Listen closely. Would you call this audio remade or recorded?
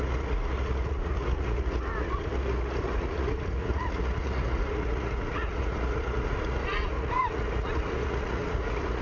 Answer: remade